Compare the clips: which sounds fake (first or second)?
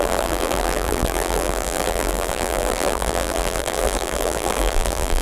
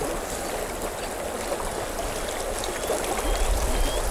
first